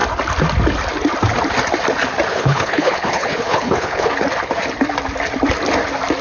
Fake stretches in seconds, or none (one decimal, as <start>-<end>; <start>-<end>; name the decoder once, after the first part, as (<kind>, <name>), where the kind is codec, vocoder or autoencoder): 2.3-4.1 (codec, HILCodec)